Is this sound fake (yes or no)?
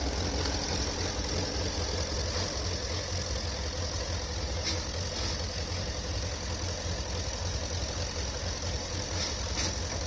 no